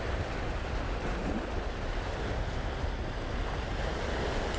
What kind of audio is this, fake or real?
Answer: real